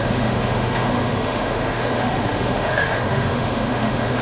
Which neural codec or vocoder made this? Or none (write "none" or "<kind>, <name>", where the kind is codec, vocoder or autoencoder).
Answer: autoencoder, DAC-VAE